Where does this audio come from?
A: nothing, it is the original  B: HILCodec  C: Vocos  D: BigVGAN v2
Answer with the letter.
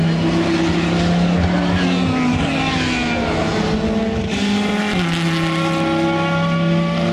A